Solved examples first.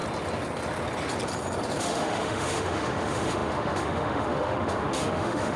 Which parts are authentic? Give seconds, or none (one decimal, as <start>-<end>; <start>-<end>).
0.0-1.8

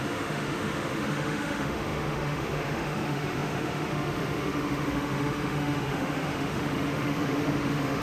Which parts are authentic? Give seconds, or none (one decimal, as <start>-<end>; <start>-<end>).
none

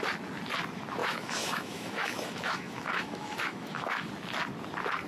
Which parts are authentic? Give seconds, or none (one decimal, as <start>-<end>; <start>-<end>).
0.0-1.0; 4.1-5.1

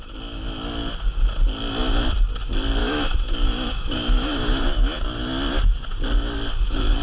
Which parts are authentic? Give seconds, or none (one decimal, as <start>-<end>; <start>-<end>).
0.0-2.8; 5.0-7.0